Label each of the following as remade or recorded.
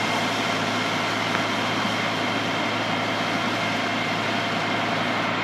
recorded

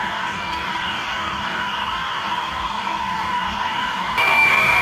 remade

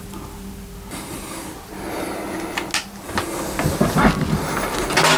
recorded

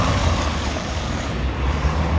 remade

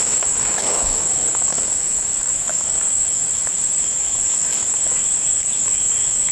remade